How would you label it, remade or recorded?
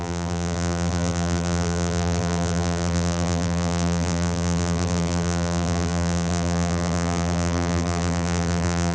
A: remade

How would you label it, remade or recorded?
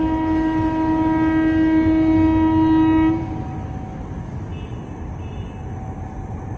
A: recorded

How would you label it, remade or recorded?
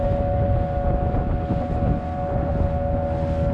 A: recorded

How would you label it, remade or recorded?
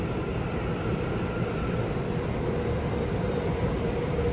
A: recorded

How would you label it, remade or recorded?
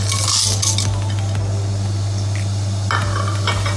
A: recorded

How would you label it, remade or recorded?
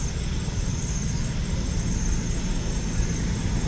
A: recorded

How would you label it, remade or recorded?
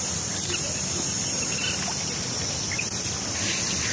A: recorded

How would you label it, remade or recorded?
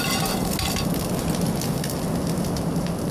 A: recorded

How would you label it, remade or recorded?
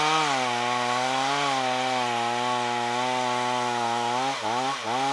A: recorded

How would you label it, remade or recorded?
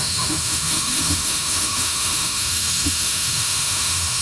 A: remade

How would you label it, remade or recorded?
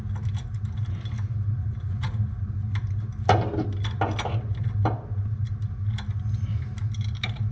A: recorded